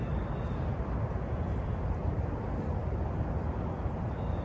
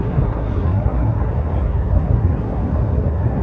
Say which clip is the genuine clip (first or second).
first